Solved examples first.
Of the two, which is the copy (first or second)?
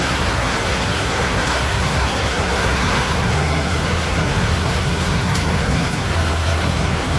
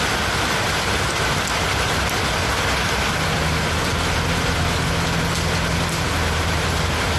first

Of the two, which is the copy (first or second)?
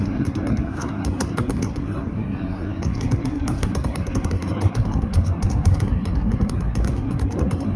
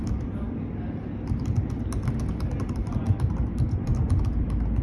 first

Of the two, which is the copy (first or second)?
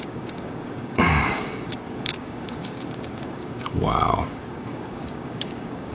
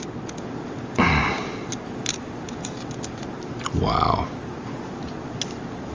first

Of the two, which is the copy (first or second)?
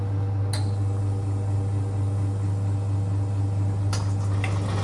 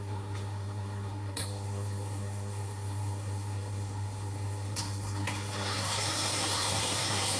second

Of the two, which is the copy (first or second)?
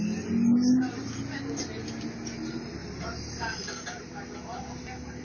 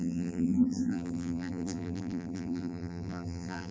second